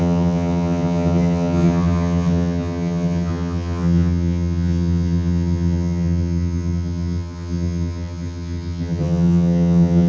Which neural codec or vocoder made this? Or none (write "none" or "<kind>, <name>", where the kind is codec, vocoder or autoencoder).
vocoder, HiFi-GAN